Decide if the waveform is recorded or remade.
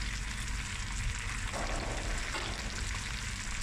recorded